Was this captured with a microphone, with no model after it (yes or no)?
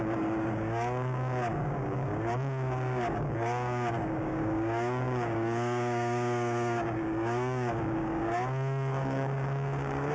no